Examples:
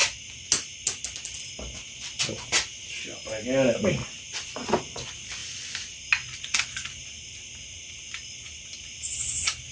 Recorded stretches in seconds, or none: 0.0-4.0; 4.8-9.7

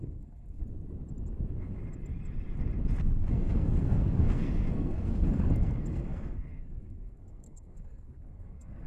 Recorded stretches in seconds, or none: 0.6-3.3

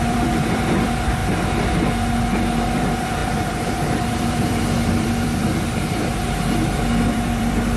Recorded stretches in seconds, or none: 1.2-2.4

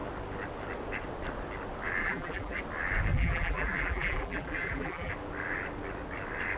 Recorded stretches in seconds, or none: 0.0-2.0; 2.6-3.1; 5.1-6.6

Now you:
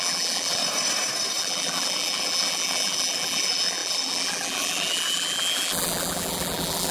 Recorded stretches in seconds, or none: 0.6-1.4

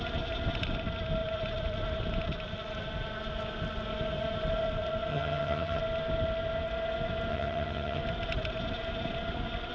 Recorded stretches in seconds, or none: 0.0-5.1; 5.8-7.3; 8.0-9.7